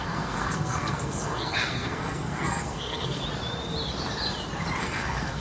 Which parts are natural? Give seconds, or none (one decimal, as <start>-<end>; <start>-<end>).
3.2-4.8